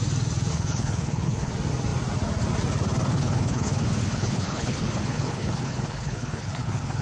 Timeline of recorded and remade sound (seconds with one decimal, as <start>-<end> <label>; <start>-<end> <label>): 0.0-0.5 recorded; 0.5-1.5 remade; 1.5-3.1 recorded; 3.1-7.0 remade